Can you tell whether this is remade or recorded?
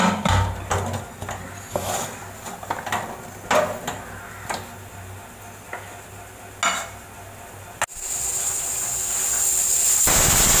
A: recorded